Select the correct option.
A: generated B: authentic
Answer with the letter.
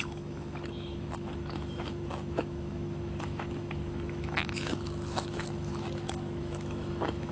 A